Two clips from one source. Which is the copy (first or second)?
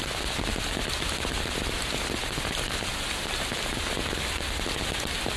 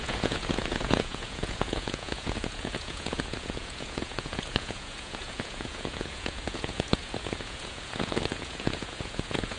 second